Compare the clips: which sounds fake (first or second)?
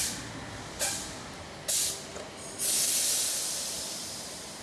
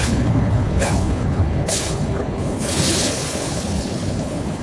second